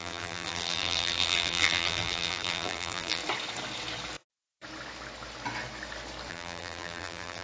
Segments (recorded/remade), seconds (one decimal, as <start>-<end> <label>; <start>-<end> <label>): 0.0-3.2 remade; 3.2-6.3 recorded; 6.3-7.4 remade